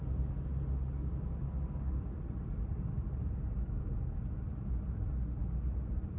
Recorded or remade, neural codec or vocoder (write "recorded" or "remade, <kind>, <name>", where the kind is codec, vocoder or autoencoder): recorded